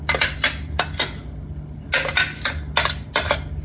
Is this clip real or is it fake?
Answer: real